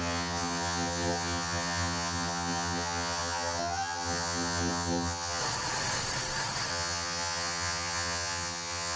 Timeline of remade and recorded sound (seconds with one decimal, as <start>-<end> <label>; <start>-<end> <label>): 0.0-5.4 remade; 5.4-6.7 recorded; 6.7-9.0 remade